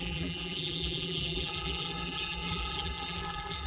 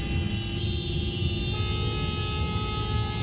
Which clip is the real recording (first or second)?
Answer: second